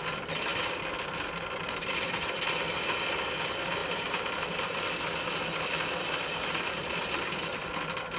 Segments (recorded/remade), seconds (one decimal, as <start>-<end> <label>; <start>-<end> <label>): 0.0-8.2 remade